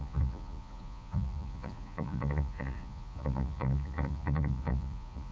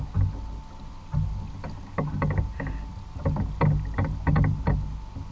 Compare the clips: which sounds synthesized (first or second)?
first